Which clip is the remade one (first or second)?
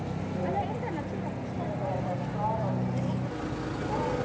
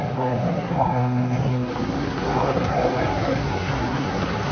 second